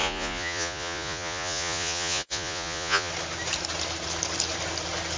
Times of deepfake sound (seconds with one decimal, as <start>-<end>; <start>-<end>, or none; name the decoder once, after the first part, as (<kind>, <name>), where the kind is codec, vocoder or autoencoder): 0.0-3.1 (vocoder, Vocos)